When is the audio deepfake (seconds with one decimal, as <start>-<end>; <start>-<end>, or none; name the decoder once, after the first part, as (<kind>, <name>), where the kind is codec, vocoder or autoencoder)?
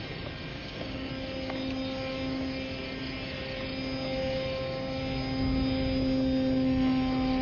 0.5-1.1 (codec, DAC)